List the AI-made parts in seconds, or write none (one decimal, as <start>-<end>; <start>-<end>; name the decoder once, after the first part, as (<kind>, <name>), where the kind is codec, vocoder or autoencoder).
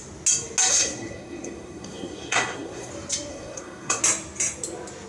0.7-2.9 (codec, SNAC); 3.3-4.0